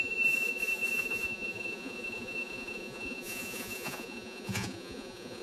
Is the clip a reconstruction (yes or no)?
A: yes